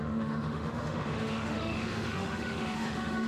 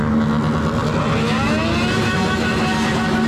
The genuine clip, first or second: second